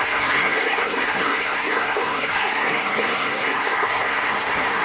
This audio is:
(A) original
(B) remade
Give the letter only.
B